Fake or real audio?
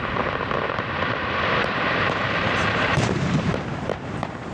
fake